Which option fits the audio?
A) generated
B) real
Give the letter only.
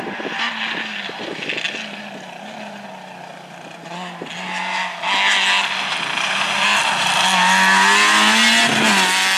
B